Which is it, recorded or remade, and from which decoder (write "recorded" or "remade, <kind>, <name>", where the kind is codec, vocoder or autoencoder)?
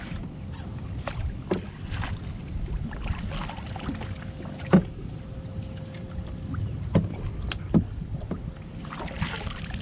recorded